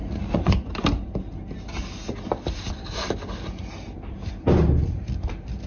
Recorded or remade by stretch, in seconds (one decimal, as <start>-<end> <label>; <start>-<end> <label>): 0.0-0.5 remade; 0.5-5.7 recorded